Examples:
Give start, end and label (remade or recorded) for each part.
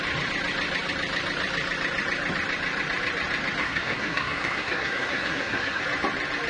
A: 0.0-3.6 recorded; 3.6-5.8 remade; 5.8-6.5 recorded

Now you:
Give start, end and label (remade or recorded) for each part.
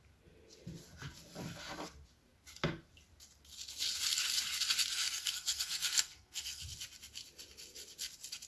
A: 0.0-4.9 recorded; 4.9-6.6 remade; 6.6-8.5 recorded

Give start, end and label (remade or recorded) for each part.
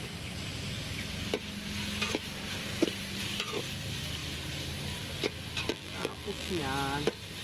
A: 0.0-5.7 recorded; 5.7-6.6 remade; 6.6-7.4 recorded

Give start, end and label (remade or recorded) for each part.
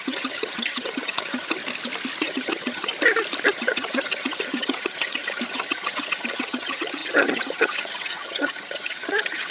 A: 0.0-1.6 remade; 1.6-2.2 recorded; 2.2-2.9 remade; 2.9-3.5 recorded; 3.5-9.5 remade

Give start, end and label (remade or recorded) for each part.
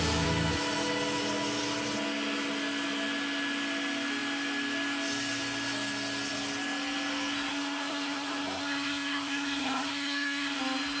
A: 0.0-7.5 recorded; 7.5-10.6 remade; 10.6-11.0 recorded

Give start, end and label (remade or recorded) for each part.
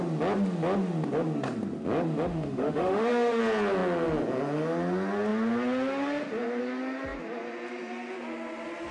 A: 0.0-2.3 recorded; 2.3-3.4 remade; 3.4-8.9 recorded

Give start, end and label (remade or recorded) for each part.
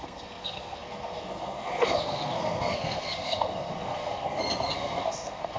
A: 0.0-5.6 remade